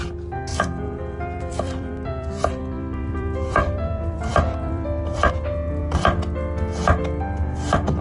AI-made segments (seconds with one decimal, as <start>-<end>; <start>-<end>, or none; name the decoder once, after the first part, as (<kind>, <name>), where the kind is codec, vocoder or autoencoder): 0.5-5.3 (vocoder, BigVGAN v2)